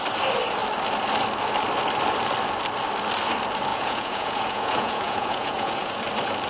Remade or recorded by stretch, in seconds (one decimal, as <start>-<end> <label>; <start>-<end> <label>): 0.0-3.7 recorded; 3.7-6.0 remade; 6.0-6.5 recorded